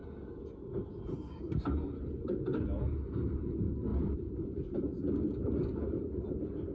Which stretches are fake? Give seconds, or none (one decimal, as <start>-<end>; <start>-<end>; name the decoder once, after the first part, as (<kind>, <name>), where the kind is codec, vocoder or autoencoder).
none